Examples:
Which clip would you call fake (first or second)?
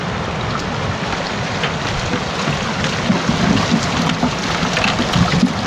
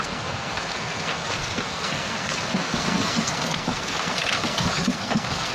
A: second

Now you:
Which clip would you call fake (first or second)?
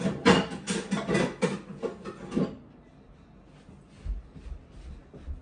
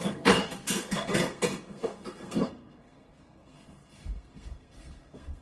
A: second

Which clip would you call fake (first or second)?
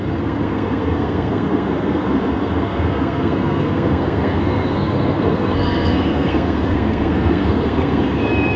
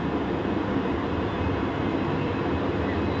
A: first